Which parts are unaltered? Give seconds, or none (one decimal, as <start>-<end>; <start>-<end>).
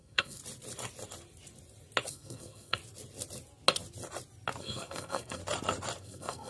0.4-2.1; 2.8-4.6; 5.4-6.0